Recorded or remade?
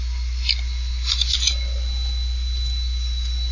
recorded